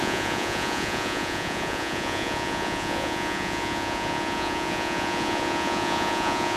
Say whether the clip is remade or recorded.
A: remade